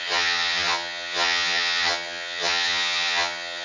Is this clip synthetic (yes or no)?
yes